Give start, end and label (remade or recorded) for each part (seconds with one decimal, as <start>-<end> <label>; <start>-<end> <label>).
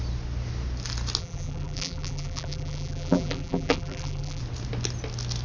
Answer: 0.0-1.2 recorded; 1.2-4.4 remade; 4.4-5.4 recorded